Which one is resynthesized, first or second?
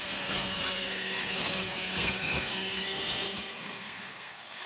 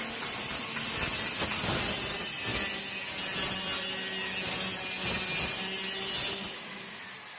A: first